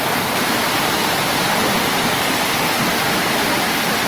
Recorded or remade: recorded